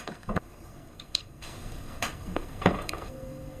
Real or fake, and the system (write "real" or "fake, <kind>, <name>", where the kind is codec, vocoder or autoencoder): fake, codec, SNAC